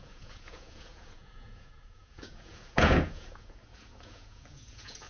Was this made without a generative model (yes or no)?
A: no